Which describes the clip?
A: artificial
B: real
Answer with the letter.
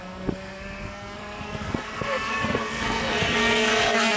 A